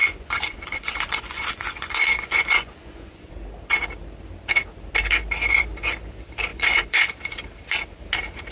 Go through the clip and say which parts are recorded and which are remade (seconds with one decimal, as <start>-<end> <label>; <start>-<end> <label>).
0.0-3.3 remade; 3.3-6.5 recorded; 6.5-7.1 remade; 7.1-8.5 recorded